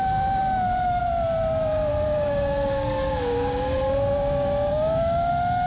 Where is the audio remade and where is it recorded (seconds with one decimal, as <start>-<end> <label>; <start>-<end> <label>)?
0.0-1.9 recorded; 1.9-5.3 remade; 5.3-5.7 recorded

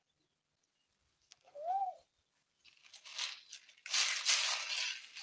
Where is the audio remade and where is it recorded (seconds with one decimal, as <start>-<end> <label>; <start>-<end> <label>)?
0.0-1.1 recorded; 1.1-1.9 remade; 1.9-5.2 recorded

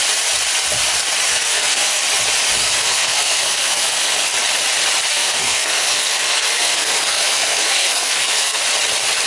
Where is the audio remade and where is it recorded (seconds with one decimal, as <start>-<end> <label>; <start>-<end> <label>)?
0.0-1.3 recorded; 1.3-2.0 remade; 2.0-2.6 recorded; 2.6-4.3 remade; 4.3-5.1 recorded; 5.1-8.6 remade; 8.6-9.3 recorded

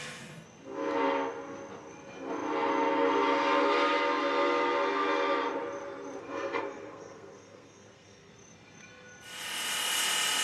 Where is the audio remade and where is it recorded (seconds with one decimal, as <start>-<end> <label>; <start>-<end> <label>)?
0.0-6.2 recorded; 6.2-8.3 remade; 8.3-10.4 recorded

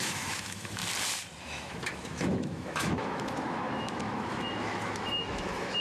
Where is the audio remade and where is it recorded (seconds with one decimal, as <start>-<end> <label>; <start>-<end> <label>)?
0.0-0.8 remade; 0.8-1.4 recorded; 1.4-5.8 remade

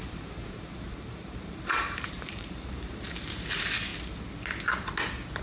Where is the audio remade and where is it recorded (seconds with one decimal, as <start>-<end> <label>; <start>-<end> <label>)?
0.0-3.2 remade; 3.2-5.4 recorded